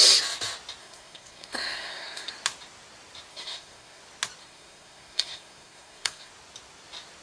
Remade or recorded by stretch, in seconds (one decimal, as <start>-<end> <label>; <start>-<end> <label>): 0.0-0.8 recorded; 0.8-2.3 remade; 2.3-3.3 recorded; 3.3-4.0 remade; 4.0-4.4 recorded; 4.4-6.3 remade; 6.3-7.2 recorded